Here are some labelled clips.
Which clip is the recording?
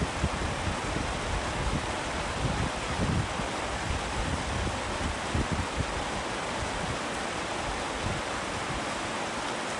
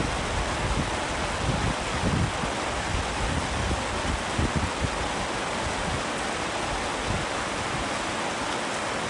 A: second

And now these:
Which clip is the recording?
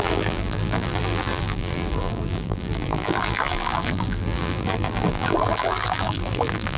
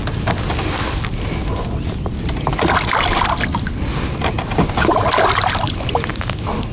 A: second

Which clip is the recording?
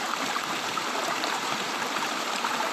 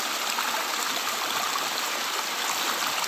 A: second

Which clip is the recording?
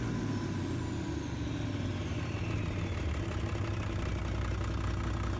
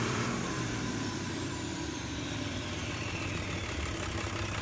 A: first